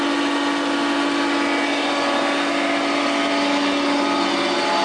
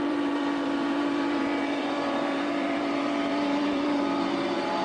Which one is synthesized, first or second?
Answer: second